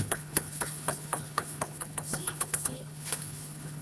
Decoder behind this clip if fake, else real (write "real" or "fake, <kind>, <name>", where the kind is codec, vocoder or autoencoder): fake, codec, HILCodec